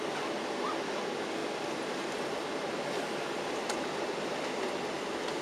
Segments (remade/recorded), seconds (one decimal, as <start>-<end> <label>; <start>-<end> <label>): 0.0-5.4 recorded